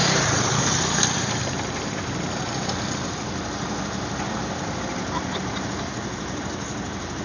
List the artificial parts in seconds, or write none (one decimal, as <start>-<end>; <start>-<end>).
0.0-0.6

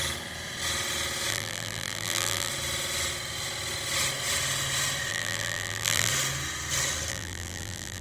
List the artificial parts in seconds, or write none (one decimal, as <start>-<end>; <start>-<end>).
1.3-2.5; 5.1-6.1; 7.1-8.0